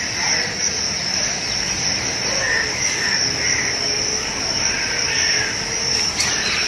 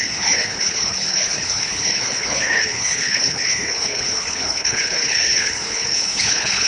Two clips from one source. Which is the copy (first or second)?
second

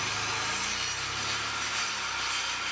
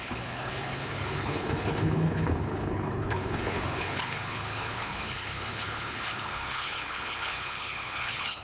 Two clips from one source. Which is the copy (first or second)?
second